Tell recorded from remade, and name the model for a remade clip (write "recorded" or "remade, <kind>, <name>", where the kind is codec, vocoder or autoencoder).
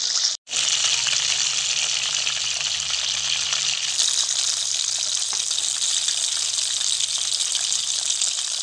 recorded